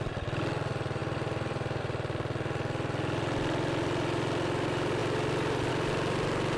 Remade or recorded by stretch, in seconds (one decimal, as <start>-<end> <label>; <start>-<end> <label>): 0.0-1.0 recorded; 1.0-1.8 remade; 1.8-5.0 recorded; 5.0-5.7 remade; 5.7-6.6 recorded